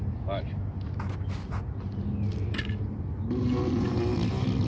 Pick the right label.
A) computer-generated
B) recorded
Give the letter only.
B